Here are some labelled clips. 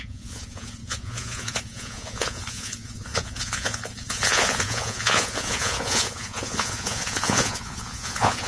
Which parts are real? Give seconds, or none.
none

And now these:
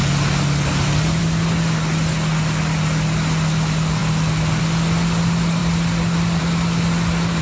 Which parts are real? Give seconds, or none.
0.0-7.4

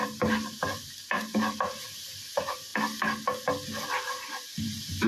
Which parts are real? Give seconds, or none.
2.7-4.3

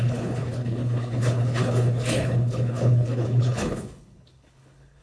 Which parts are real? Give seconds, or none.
none

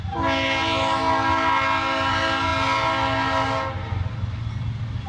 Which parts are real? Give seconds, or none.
0.0-5.1

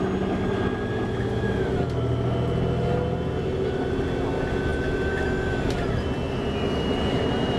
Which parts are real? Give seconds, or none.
0.0-7.6